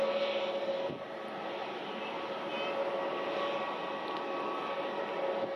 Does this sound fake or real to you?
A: real